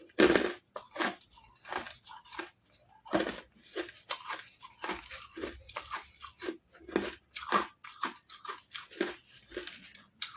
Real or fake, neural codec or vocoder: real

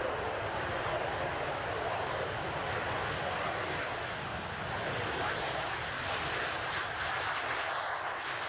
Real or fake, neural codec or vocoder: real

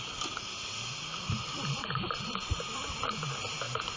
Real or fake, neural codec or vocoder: fake, vocoder, BigVGAN v2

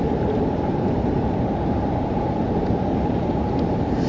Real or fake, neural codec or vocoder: fake, vocoder, BigVGAN v2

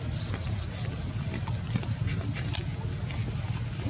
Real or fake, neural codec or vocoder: real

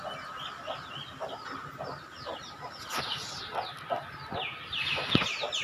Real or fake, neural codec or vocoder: real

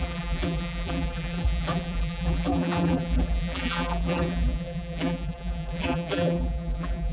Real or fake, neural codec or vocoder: fake, vocoder, BigVGAN v2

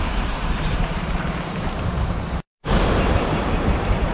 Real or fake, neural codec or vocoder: fake, vocoder, BigVGAN v2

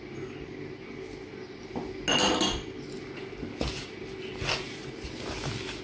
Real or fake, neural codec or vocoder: real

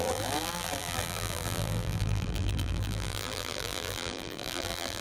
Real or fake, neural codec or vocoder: fake, vocoder, BigVGAN v2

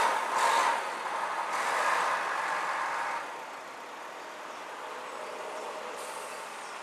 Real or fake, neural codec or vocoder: real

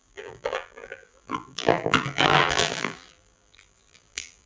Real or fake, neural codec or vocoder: fake, vocoder, BigVGAN v2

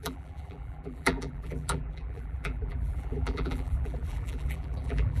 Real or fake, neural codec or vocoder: fake, vocoder, BigVGAN v2